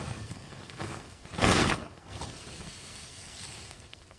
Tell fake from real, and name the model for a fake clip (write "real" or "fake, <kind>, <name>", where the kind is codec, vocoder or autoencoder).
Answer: fake, codec, SNAC